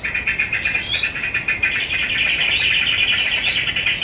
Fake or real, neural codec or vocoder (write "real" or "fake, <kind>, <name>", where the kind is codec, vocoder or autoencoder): real